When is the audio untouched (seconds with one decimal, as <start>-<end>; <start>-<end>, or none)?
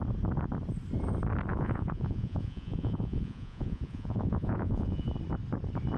0.0-1.5; 5.1-6.0